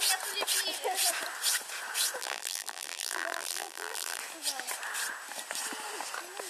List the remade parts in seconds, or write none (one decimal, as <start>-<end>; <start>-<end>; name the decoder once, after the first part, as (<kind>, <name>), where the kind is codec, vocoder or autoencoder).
2.2-4.2 (vocoder, BigVGAN v2)

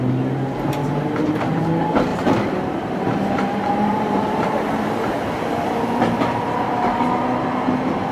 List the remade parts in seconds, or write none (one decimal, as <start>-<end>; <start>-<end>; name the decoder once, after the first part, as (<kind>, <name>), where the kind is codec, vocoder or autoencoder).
0.8-1.6 (vocoder, BigVGAN v2); 2.1-7.0